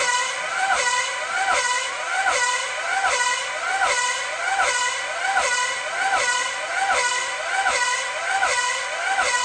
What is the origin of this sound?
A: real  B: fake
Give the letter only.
A